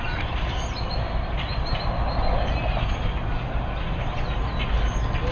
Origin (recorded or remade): recorded